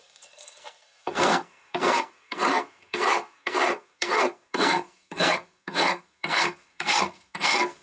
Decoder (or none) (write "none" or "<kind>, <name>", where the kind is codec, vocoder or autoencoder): codec, SNAC